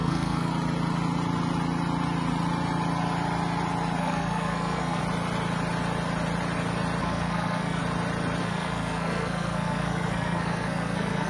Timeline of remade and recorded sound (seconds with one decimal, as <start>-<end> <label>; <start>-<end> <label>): 0.0-0.5 remade; 0.5-4.0 recorded; 4.0-5.0 remade; 5.0-7.0 recorded; 7.0-7.8 remade; 7.8-8.4 recorded; 8.4-11.3 remade